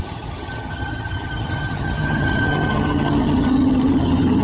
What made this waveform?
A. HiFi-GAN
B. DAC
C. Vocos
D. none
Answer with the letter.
A